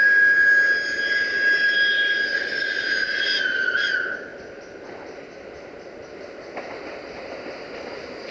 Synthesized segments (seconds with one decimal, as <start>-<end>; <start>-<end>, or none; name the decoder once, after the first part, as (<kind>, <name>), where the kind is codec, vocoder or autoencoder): none